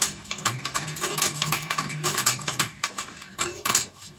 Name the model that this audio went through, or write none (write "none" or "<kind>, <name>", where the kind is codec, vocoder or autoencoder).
codec, DAC